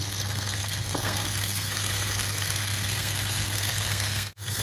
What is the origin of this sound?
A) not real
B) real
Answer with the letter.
A